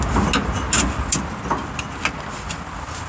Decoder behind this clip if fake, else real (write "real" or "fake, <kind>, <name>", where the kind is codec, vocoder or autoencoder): real